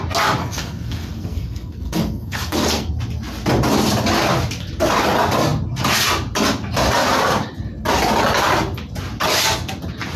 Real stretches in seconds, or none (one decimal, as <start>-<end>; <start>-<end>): 0.0-0.4; 2.9-10.2